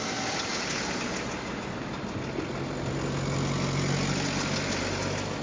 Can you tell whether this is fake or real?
real